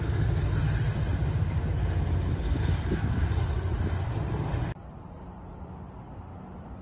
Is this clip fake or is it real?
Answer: real